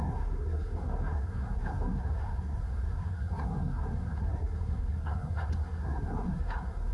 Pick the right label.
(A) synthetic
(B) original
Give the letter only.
A